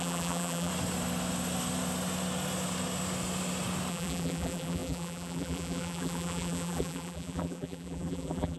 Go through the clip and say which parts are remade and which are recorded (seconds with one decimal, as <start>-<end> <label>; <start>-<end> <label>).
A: 0.0-0.7 remade; 0.7-3.9 recorded; 3.9-8.6 remade